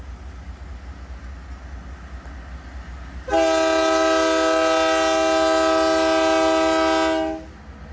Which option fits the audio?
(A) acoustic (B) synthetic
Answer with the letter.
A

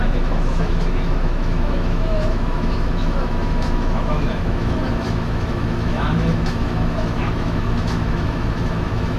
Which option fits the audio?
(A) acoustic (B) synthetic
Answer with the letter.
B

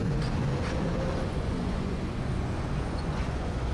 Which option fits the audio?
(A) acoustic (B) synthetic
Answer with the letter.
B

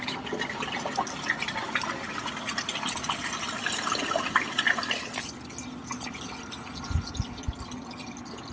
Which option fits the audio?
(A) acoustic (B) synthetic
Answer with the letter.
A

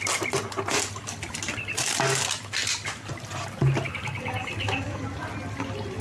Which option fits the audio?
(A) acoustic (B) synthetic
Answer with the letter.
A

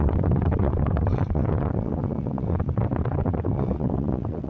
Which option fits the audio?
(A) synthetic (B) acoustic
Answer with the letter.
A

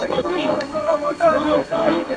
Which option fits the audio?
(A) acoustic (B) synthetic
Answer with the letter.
B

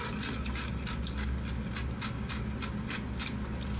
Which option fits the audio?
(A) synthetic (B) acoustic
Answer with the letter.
B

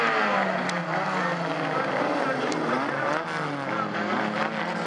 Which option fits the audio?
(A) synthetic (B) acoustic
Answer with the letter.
B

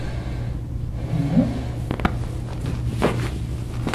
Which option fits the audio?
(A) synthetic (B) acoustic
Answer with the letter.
B